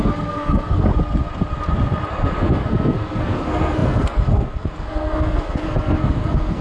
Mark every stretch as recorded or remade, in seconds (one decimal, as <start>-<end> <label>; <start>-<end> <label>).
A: 0.0-0.9 remade; 0.9-2.1 recorded; 2.1-6.6 remade